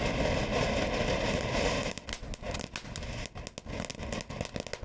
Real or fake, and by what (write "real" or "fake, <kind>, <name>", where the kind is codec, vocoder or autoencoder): real